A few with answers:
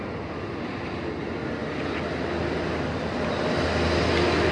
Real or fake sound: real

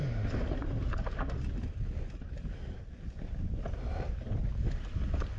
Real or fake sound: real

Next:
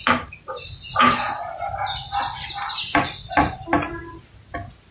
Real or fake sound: real